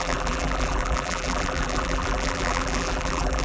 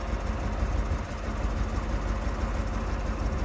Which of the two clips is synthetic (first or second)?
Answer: first